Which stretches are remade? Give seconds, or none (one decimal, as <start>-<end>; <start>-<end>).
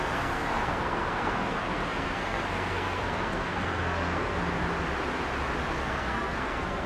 0.0-4.4; 5.7-6.9